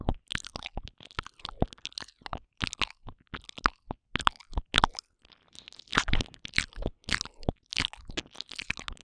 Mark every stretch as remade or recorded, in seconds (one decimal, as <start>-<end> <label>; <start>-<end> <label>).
0.0-9.0 recorded